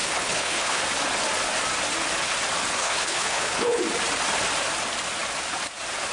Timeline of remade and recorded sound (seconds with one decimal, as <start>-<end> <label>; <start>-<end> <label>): 0.0-0.8 remade; 0.8-2.8 recorded; 2.8-3.8 remade; 3.8-6.1 recorded